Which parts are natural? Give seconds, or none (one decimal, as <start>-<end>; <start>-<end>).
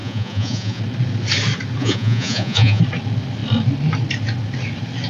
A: 0.8-1.8; 2.8-5.1